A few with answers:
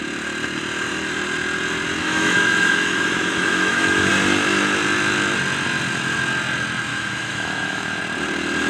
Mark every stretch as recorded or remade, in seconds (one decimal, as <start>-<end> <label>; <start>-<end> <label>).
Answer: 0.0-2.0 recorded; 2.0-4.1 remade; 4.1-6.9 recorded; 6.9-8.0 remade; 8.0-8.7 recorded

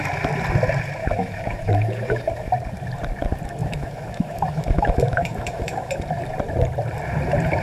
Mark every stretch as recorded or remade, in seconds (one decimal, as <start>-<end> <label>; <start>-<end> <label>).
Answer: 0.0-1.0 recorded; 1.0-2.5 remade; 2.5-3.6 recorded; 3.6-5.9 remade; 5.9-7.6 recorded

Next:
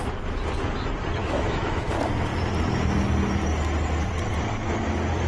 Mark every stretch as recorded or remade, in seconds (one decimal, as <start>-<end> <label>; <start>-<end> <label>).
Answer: 0.0-1.2 recorded; 1.2-1.9 remade; 1.9-5.3 recorded

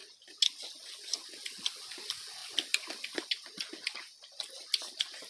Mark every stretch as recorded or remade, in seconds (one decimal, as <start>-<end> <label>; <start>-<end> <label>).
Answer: 0.0-5.3 recorded